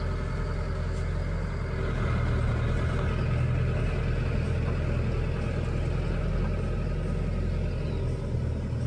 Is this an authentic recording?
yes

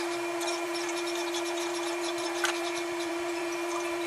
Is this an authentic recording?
no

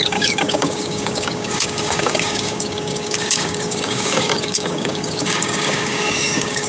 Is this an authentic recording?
no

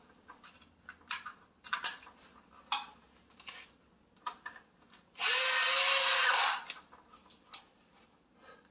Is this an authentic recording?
yes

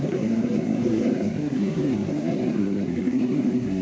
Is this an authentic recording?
no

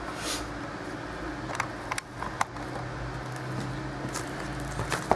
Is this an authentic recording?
yes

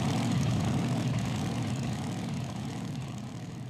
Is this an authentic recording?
no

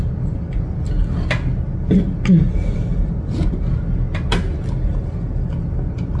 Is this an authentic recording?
yes